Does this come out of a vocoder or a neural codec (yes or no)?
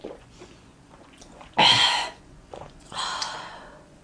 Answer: yes